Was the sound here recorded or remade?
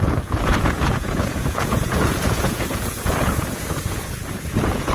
remade